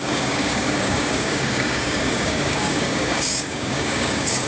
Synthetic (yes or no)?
yes